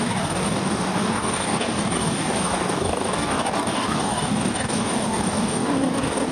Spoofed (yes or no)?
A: yes